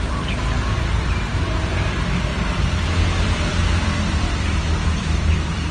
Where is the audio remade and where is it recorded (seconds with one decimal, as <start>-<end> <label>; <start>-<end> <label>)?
0.0-5.7 remade